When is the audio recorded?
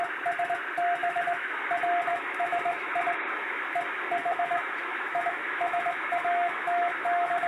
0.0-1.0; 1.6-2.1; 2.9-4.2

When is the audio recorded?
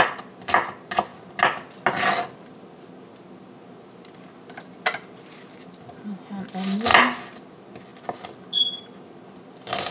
0.0-9.9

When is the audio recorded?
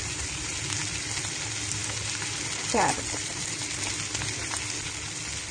0.0-5.5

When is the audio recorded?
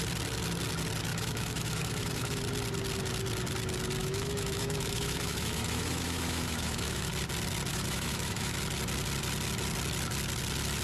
0.0-1.1; 2.4-4.0; 7.1-7.7; 8.6-10.8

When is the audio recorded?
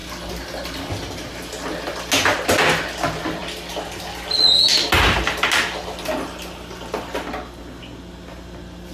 0.0-8.9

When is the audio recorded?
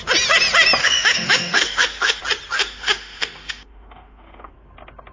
0.0-0.8; 2.2-2.6; 4.5-5.1